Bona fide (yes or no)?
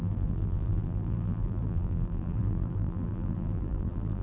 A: no